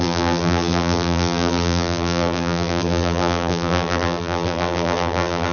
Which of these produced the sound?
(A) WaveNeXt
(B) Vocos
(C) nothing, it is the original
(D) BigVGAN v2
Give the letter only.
D